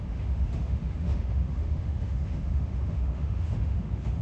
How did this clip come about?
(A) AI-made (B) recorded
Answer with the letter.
A